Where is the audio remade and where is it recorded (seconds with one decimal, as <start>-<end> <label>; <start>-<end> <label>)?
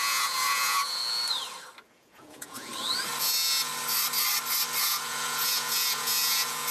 0.0-1.0 remade; 1.0-1.9 recorded; 1.9-2.7 remade; 2.7-3.2 recorded; 3.2-3.7 remade; 3.7-4.8 recorded; 4.8-6.7 remade